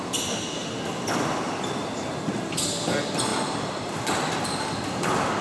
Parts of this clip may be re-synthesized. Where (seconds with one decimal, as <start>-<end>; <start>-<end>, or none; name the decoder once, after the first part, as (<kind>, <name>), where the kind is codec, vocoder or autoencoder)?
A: 3.3-4.1 (vocoder, BigVGAN v2)